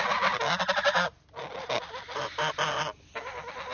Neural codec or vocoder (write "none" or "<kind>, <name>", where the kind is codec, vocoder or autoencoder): none